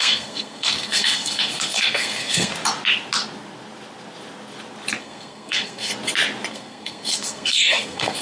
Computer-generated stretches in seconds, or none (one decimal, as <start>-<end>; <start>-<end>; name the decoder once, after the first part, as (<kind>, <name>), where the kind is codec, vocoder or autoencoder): 0.0-2.5 (codec, SNAC); 5.0-5.9; 6.5-8.2